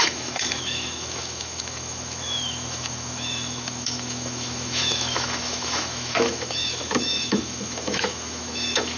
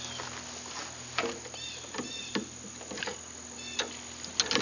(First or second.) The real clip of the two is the second